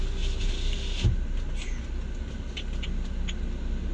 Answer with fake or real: real